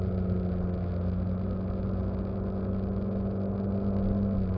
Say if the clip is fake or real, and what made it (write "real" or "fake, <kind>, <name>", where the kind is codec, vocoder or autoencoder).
real